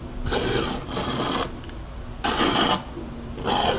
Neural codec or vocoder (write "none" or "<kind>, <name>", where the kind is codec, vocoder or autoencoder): none